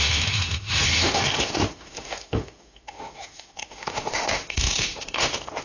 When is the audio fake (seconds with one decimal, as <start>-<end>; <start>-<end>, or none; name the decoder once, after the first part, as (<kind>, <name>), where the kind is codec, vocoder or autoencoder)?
0.0-5.6 (autoencoder, DAC-VAE)